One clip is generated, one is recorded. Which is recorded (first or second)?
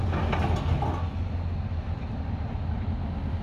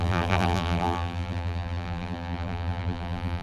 first